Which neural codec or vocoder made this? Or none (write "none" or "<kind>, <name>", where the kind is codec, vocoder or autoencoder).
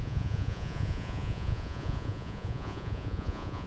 vocoder, Vocos